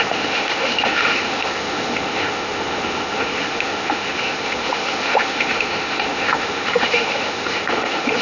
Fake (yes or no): yes